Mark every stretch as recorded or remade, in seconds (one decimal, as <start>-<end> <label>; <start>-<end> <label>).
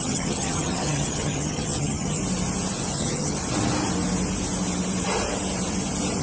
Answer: 0.0-2.2 remade; 2.2-2.9 recorded; 2.9-3.4 remade; 3.4-6.2 recorded